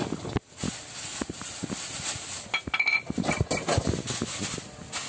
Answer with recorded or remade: recorded